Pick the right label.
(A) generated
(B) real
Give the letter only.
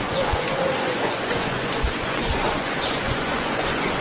A